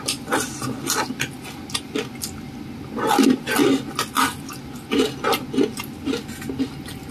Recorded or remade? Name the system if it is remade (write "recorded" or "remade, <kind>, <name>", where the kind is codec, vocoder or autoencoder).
recorded